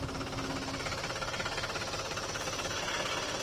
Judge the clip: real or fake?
real